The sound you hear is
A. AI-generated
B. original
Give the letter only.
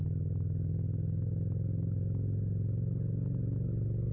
B